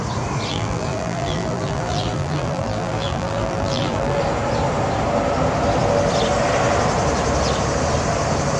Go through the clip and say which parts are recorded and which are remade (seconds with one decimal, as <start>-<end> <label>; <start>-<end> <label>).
0.0-0.5 recorded; 0.5-4.2 remade; 4.2-8.6 recorded